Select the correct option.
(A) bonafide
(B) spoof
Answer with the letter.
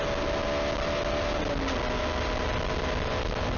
A